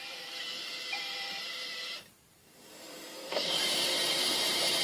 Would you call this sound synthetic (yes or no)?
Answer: yes